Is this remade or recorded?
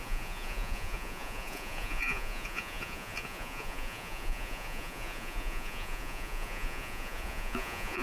remade